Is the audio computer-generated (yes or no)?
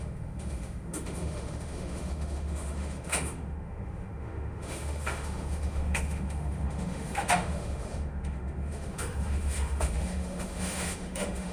yes